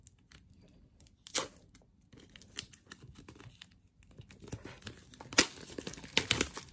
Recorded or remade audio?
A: recorded